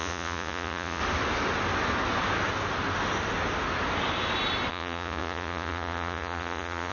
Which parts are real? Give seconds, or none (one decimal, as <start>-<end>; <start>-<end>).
1.0-4.7